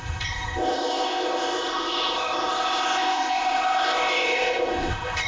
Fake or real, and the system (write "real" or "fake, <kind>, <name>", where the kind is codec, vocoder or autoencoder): fake, codec, ZipCodec